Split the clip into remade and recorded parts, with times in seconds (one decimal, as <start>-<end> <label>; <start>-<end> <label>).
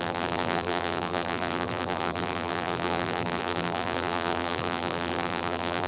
0.0-5.9 remade